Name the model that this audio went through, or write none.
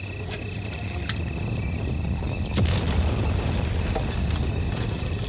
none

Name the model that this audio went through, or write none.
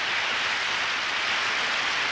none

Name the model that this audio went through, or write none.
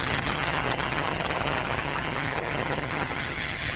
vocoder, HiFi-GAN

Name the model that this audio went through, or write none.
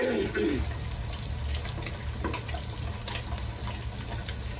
none